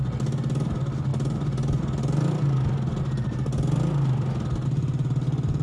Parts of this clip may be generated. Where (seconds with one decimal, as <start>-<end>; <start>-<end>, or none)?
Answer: none